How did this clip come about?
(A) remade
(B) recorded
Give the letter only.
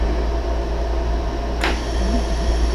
B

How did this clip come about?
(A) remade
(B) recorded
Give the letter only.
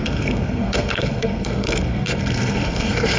A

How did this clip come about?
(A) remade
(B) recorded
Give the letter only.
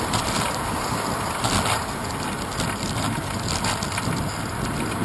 B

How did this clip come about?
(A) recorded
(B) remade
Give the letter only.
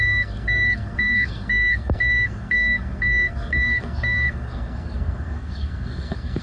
B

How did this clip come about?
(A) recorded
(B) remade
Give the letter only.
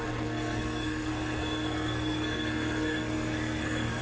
B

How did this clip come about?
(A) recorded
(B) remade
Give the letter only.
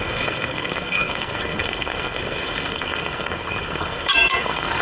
B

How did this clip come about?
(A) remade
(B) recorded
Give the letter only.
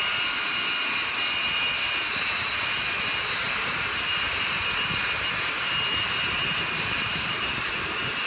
B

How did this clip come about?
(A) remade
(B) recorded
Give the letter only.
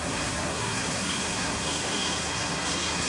A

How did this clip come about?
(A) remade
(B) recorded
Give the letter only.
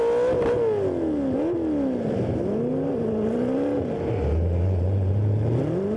B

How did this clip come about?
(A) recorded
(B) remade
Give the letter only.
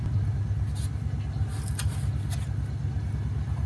A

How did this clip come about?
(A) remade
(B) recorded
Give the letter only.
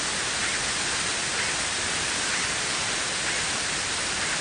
B